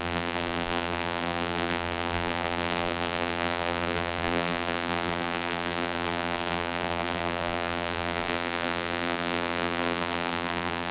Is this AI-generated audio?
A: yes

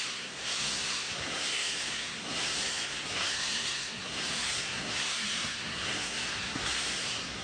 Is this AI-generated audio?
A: yes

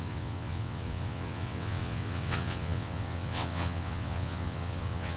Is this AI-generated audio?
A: yes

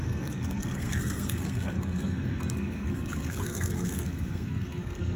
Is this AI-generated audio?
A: yes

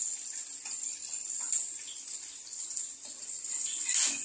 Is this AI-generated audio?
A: no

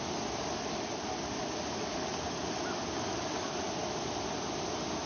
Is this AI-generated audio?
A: no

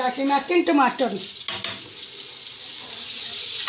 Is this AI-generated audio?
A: no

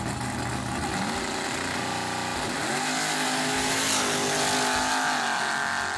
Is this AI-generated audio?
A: no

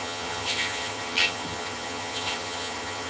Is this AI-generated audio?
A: yes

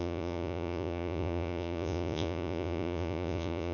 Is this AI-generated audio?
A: yes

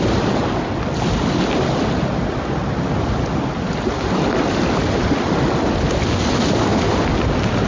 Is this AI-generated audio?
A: no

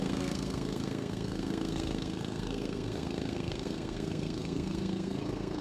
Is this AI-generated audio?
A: yes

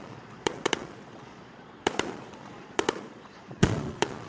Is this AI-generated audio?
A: yes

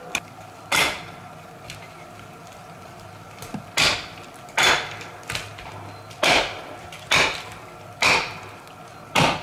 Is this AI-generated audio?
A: no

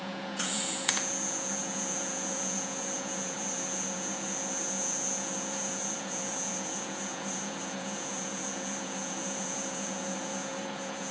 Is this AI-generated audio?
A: yes